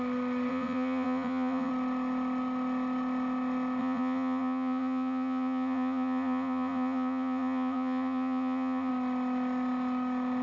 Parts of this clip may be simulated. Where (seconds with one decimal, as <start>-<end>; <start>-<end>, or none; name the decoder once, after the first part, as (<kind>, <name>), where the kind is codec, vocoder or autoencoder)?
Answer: 0.5-1.7 (vocoder, Vocos); 3.8-8.9